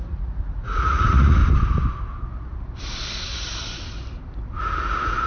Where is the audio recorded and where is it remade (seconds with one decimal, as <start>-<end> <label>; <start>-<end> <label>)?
0.0-1.4 remade; 1.4-4.6 recorded; 4.6-5.3 remade